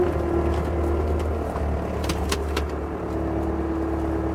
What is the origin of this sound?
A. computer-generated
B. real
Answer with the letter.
B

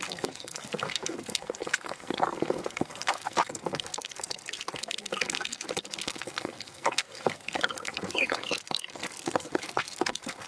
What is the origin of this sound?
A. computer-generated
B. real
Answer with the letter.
A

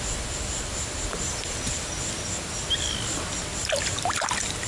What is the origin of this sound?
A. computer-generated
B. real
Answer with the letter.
B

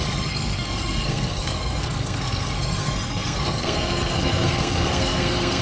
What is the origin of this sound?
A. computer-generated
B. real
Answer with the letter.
A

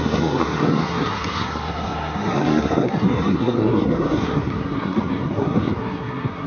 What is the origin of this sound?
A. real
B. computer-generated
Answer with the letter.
B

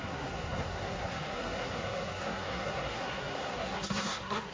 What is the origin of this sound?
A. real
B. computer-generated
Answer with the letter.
B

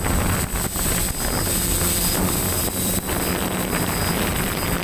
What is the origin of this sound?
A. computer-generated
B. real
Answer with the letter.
B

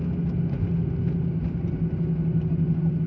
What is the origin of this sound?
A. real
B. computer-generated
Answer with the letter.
A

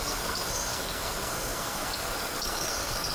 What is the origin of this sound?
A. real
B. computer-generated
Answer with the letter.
B